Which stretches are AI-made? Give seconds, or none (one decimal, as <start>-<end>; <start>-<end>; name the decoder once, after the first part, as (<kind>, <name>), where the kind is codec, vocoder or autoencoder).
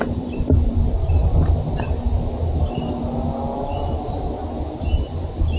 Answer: 0.0-1.2 (vocoder, BigVGAN v2); 4.6-5.6